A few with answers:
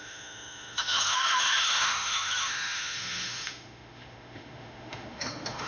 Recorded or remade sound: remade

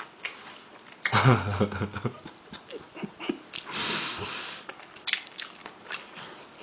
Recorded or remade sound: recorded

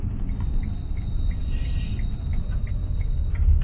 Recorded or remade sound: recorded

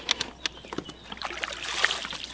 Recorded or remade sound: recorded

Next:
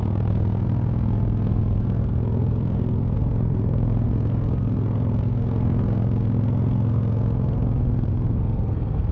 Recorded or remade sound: remade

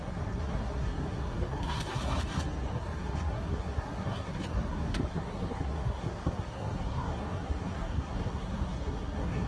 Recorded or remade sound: remade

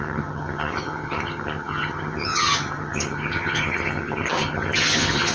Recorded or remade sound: remade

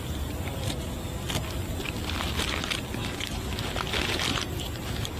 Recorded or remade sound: recorded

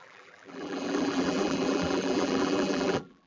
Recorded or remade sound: remade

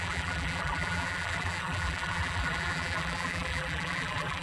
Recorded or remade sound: remade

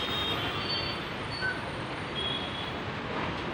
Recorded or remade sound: remade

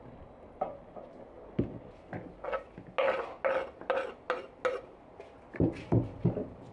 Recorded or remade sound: recorded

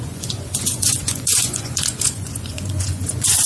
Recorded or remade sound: remade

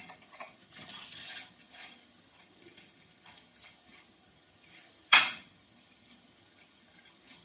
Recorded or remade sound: remade